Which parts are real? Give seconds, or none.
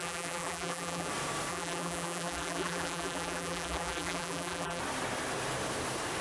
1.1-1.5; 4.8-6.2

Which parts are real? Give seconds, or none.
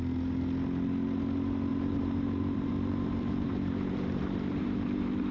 0.0-1.7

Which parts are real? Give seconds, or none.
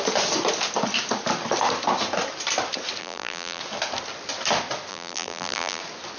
0.0-3.0; 3.6-4.9; 5.8-6.2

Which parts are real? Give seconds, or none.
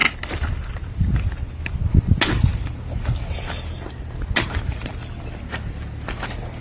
0.0-6.6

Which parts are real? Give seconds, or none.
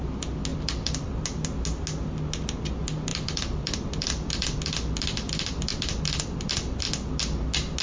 0.0-0.5; 1.1-3.1; 4.6-5.7; 6.8-7.8